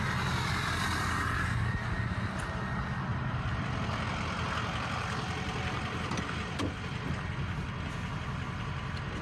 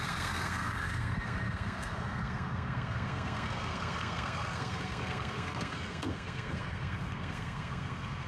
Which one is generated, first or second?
second